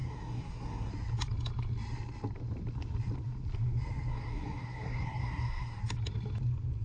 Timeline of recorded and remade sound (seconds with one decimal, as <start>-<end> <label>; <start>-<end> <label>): 0.0-0.9 remade; 0.9-4.1 recorded; 4.1-5.8 remade; 5.8-6.8 recorded

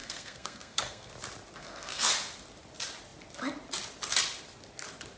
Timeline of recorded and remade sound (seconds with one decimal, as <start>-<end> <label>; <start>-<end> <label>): 0.0-1.1 remade; 1.1-1.6 recorded; 1.6-2.1 remade; 2.1-5.2 recorded

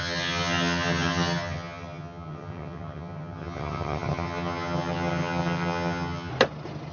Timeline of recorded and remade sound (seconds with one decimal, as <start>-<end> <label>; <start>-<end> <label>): 0.0-6.3 remade; 6.3-6.9 recorded

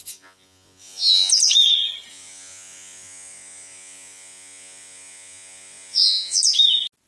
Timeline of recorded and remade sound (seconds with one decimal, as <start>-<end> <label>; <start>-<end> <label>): 0.0-1.3 remade; 1.3-2.1 recorded; 2.1-6.4 remade; 6.4-7.1 recorded